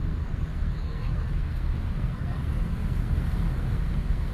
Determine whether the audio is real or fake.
fake